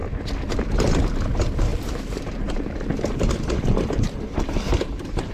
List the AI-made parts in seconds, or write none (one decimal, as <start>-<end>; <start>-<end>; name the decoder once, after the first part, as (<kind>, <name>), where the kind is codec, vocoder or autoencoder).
1.7-5.3 (vocoder, BigVGAN v2)